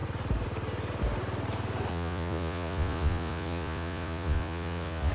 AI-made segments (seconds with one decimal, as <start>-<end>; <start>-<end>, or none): 1.9-5.1